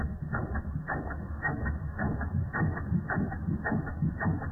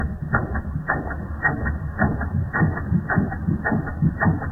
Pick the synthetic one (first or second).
first